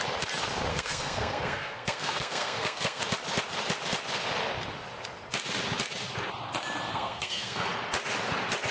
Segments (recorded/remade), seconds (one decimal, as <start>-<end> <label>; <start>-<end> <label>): 0.0-0.7 recorded; 0.7-3.0 remade; 3.0-6.9 recorded; 6.9-7.7 remade; 7.7-8.7 recorded